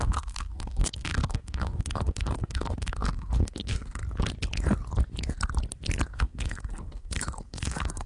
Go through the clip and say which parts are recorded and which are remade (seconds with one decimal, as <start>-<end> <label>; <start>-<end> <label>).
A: 0.0-4.0 remade; 4.0-6.1 recorded; 6.1-8.1 remade

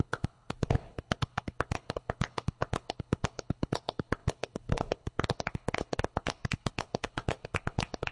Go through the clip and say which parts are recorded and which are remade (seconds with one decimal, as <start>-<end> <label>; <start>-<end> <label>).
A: 0.0-8.1 remade

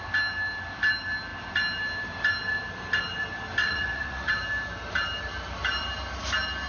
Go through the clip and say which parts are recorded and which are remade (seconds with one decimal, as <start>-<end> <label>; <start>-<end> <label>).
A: 0.0-3.6 recorded; 3.6-4.3 remade; 4.3-6.7 recorded